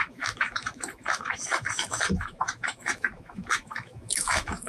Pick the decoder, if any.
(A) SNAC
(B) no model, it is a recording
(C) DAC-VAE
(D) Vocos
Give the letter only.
C